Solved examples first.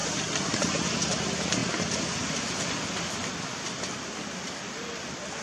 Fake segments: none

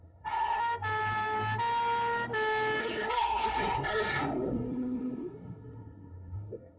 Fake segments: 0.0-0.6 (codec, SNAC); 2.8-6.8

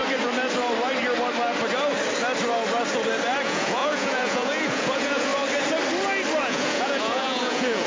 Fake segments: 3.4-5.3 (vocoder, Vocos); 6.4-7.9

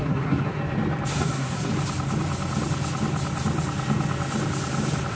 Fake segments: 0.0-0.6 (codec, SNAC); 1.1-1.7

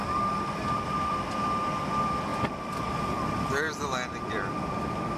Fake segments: 0.5-2.3 (vocoder, BigVGAN v2); 3.3-5.2

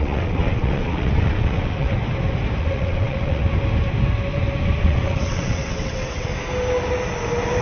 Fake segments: 0.0-2.0 (vocoder, WaveNeXt); 2.6-3.4; 4.8-6.3